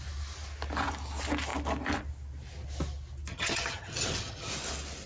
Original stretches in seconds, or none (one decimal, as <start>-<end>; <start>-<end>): 0.0-3.3; 4.5-5.1